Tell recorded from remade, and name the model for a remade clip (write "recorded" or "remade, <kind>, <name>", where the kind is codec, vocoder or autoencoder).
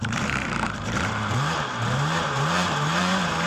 remade, vocoder, BigVGAN v2